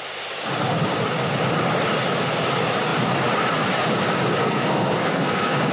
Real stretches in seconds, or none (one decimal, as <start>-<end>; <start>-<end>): 0.0-4.4